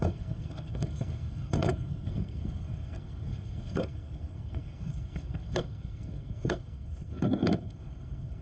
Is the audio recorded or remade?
remade